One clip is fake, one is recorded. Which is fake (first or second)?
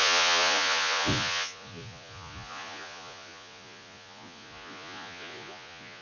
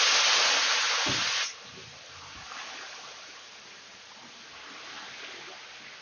first